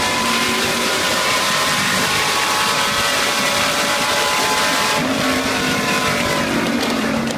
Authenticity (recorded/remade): remade